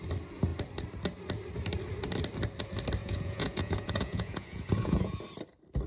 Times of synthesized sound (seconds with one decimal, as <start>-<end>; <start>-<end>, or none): 3.0-5.2